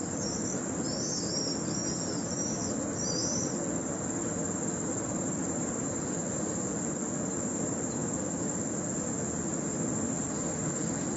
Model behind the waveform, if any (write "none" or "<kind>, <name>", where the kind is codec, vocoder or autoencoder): none